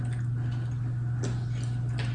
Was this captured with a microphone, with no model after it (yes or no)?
yes